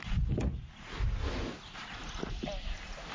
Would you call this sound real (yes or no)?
yes